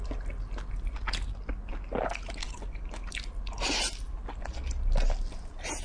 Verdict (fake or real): real